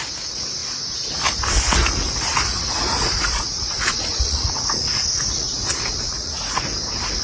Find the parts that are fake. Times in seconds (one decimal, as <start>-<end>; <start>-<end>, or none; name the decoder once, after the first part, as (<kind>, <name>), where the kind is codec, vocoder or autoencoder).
2.3-6.6 (vocoder, Vocos)